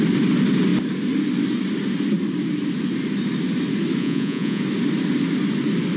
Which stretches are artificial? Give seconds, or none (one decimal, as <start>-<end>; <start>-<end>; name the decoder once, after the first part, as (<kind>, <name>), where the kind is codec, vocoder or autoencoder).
4.0-4.6 (vocoder, Vocos)